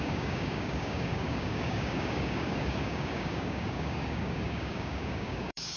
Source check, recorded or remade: remade